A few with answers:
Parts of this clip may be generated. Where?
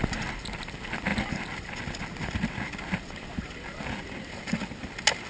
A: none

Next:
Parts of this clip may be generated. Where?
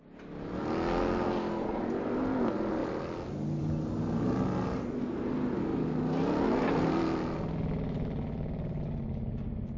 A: none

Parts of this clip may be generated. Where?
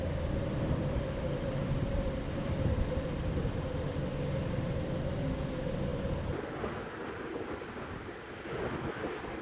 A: none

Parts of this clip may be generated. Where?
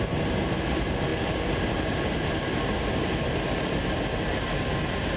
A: 1.1-4.2 (vocoder, BigVGAN v2)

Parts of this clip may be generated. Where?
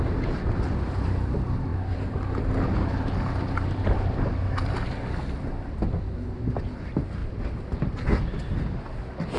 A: none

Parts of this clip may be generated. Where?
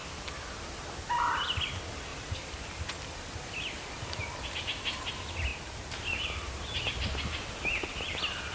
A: none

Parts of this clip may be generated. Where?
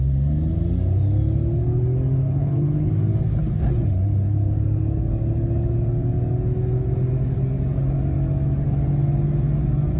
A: 2.2-2.9 (codec, HILCodec)